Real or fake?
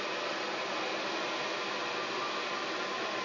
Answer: real